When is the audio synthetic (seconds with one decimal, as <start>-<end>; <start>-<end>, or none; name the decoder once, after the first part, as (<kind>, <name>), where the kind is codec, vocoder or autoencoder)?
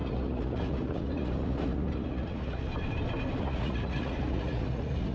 0.0-2.7 (vocoder, Vocos); 3.4-5.1